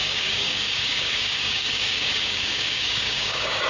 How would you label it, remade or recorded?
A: remade